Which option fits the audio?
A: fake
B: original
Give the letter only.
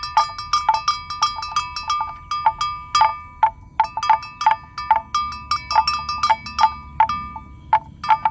B